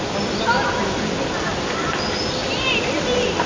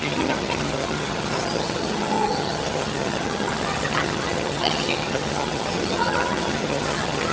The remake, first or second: second